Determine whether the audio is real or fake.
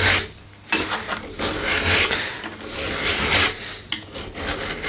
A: real